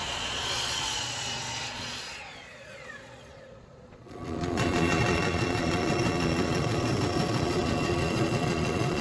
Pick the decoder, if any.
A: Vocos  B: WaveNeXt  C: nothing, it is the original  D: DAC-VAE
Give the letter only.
A